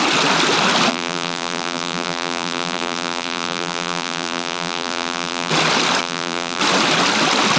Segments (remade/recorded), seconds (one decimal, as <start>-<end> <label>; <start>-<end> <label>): 0.0-0.9 recorded; 0.9-5.5 remade; 5.5-6.0 recorded; 6.0-6.6 remade; 6.6-7.6 recorded